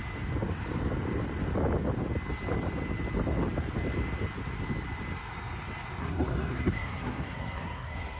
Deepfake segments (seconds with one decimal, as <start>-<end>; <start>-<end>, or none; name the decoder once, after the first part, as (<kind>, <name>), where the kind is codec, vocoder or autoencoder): 6.0-8.2 (codec, SNAC)

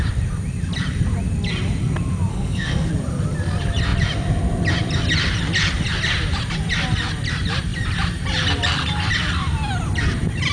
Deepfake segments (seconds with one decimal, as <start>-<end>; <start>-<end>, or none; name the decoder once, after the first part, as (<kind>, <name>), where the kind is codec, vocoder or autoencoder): 2.3-2.9 (codec, SNAC)

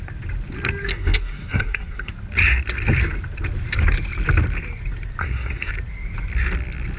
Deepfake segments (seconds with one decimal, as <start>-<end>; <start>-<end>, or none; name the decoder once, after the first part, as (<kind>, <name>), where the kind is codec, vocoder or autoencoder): 0.9-2.1 (codec, SNAC); 5.2-5.7

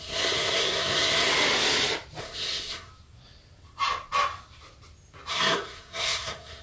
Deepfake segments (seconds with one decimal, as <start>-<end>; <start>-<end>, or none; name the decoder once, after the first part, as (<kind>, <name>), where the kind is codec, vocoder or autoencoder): 0.0-1.3 (codec, SNAC); 2.2-2.9; 5.3-6.6

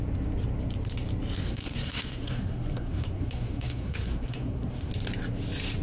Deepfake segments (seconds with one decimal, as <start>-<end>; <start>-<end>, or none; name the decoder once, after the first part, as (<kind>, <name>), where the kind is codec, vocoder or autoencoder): 1.4-4.9 (codec, SNAC)

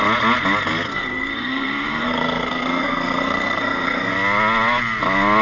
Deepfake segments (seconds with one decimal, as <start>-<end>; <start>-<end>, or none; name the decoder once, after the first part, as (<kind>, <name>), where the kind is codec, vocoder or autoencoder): 0.9-4.1 (codec, SNAC)